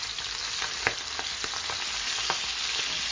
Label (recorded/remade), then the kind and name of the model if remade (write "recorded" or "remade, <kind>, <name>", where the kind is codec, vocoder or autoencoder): recorded